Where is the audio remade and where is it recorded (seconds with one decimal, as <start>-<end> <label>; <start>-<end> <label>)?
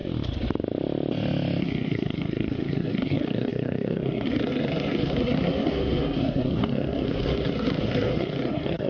0.0-1.6 recorded; 1.6-8.9 remade